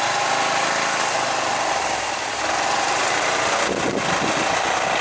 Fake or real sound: real